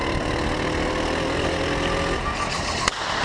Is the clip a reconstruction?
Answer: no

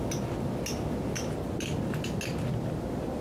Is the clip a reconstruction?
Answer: no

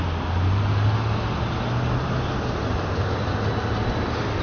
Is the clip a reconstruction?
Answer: no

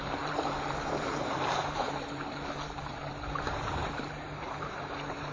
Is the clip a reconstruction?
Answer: yes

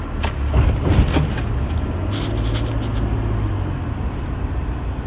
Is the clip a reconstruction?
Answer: no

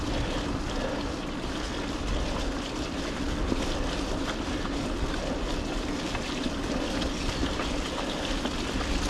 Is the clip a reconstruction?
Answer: no